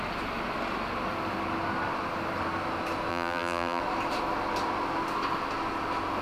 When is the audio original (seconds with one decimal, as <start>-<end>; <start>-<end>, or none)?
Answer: 0.0-3.1; 3.8-6.2